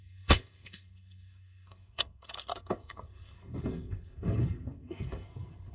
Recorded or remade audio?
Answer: remade